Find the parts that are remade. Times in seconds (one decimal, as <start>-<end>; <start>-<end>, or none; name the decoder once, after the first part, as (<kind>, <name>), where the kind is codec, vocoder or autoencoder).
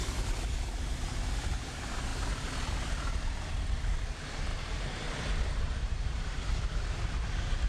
4.5-6.2 (vocoder, BigVGAN v2)